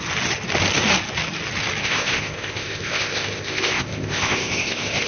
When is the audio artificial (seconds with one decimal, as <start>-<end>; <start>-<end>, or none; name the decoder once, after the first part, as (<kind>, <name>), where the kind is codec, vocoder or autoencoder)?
1.8-5.1 (codec, ZipCodec)

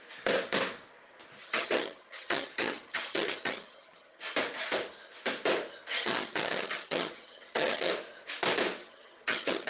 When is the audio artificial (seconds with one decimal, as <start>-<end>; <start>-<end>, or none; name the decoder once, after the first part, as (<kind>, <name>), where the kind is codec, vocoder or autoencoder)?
1.4-4.2 (vocoder, HiFi-GAN); 5.9-7.9; 8.8-9.7